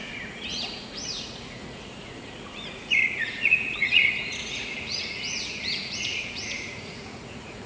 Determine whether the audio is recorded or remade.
remade